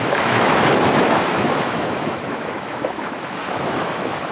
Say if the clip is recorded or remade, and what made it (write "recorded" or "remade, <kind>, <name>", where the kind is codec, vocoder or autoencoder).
remade, autoencoder, DAC-VAE